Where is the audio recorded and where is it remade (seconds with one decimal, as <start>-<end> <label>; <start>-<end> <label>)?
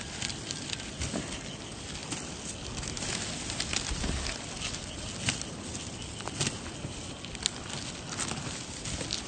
0.0-9.3 recorded